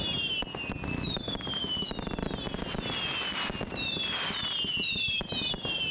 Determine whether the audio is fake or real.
real